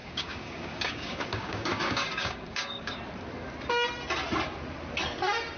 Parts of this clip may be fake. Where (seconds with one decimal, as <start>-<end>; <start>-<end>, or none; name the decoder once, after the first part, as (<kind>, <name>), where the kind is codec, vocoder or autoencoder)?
0.0-3.0 (codec, DAC)